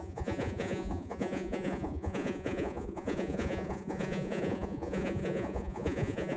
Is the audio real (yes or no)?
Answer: no